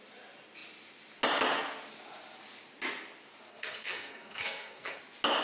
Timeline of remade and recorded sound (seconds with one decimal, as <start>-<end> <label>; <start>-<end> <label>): 0.0-3.5 recorded; 3.5-5.0 remade; 5.0-5.4 recorded